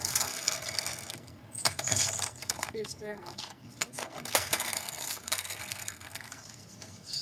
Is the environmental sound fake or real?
fake